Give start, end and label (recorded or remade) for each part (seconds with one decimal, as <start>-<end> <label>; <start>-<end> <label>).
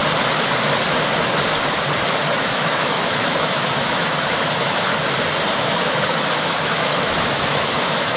0.0-2.2 recorded; 2.2-4.9 remade; 4.9-5.5 recorded; 5.5-8.2 remade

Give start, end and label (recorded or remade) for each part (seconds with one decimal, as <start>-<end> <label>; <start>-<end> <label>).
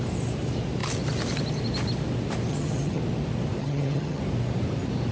0.0-2.5 recorded; 2.5-3.0 remade; 3.0-3.6 recorded; 3.6-4.2 remade; 4.2-5.1 recorded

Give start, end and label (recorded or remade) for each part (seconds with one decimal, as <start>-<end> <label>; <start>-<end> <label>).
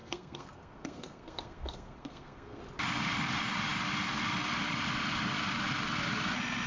0.0-2.6 remade; 2.6-6.7 recorded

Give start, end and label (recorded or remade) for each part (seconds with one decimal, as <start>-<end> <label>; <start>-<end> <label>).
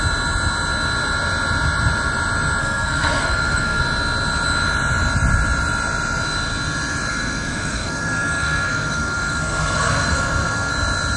0.0-2.6 recorded; 2.6-3.8 remade; 3.8-7.1 recorded; 7.1-10.7 remade; 10.7-11.2 recorded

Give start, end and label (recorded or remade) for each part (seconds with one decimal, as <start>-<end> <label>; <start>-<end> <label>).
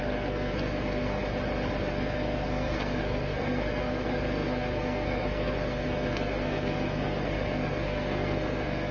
0.0-1.2 remade; 1.2-1.9 recorded; 1.9-8.9 remade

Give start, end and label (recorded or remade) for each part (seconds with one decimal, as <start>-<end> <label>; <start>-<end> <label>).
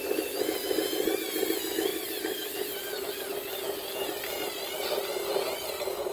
0.0-6.1 recorded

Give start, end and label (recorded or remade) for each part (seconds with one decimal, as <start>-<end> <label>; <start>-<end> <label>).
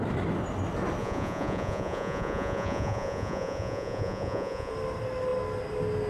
0.0-1.0 recorded; 1.0-4.7 remade; 4.7-6.1 recorded